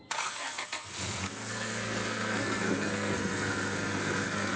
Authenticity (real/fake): fake